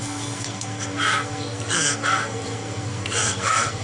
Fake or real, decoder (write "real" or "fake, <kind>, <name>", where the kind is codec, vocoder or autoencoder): fake, codec, SNAC